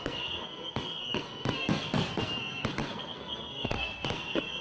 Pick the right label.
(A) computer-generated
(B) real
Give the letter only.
A